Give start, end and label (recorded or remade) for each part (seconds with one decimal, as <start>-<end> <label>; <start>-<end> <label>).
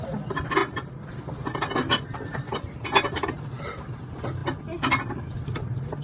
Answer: 0.0-1.8 recorded; 1.8-3.8 remade; 3.8-6.0 recorded